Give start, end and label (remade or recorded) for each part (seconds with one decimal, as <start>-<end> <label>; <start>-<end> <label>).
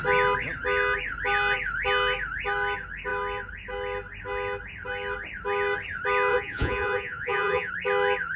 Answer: 0.0-6.3 recorded; 6.3-7.7 remade; 7.7-8.4 recorded